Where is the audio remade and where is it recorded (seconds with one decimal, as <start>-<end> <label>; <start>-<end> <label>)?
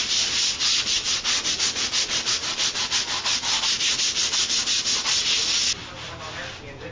0.0-6.9 recorded